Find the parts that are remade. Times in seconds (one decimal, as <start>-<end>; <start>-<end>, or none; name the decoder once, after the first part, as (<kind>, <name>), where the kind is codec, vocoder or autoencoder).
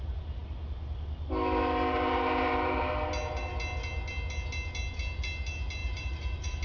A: 5.8-6.6 (vocoder, BigVGAN v2)